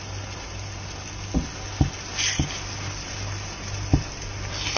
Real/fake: real